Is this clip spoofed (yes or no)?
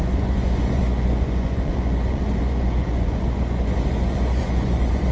yes